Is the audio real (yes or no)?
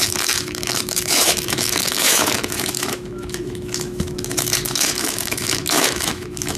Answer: no